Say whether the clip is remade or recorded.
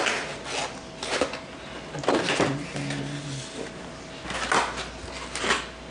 recorded